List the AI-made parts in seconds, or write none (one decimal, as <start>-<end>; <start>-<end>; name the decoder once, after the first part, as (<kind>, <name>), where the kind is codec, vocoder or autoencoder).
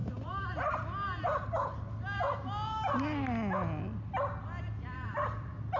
none